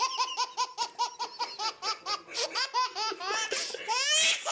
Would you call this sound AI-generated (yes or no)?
no